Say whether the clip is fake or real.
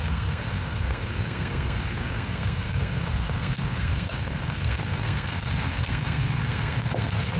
fake